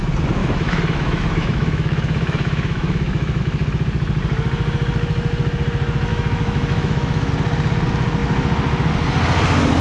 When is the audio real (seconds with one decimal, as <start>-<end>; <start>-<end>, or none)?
0.0-0.4; 3.4-6.1; 7.3-9.8